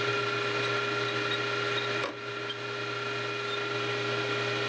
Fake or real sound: real